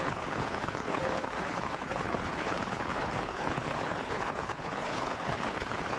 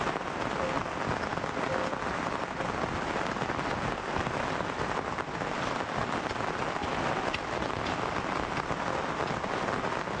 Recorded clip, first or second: second